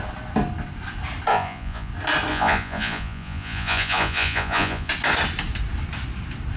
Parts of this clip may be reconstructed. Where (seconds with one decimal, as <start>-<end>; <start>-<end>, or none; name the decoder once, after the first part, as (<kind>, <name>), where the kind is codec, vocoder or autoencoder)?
1.3-1.9 (vocoder, Vocos); 2.3-4.9